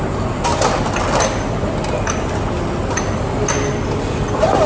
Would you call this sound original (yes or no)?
yes